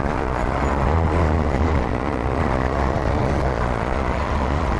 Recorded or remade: remade